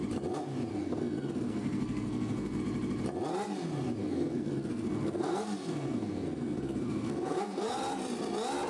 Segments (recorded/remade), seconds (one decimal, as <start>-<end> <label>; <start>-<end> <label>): 0.0-0.7 recorded; 0.7-2.6 remade; 2.6-4.0 recorded; 4.0-7.7 remade; 7.7-8.7 recorded